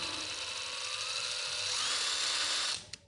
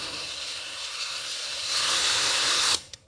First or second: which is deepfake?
second